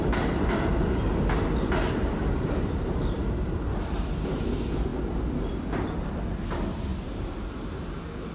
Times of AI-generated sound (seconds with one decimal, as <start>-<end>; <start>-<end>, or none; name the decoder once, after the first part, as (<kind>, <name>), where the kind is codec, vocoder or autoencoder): 6.9-7.8 (vocoder, BigVGAN v2)